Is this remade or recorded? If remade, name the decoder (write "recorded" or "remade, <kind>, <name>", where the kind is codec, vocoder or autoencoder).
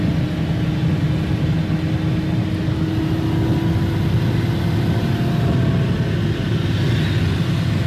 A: recorded